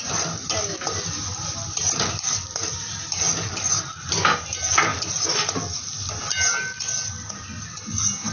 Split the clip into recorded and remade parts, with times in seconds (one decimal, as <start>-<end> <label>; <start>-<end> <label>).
0.0-8.3 recorded